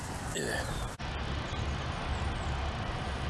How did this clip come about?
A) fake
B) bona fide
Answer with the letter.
B